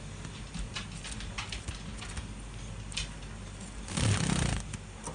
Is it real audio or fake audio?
real